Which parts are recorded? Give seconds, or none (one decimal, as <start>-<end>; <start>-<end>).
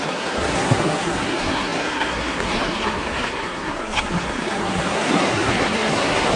none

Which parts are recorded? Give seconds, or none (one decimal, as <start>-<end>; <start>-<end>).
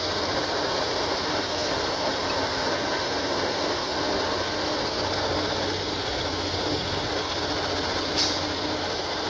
0.0-9.3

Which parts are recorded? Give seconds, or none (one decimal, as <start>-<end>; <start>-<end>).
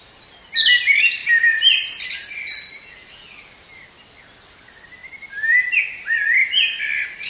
0.0-7.3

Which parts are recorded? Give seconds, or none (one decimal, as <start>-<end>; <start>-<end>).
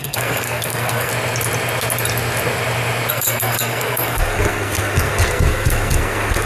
1.1-3.1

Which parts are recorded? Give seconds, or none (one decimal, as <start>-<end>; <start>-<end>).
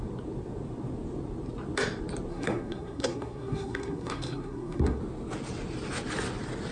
0.0-2.3; 5.0-6.7